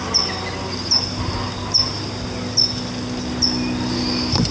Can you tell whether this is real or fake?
real